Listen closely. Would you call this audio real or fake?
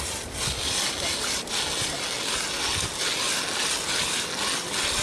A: real